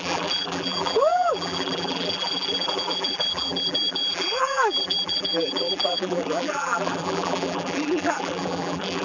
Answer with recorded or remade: remade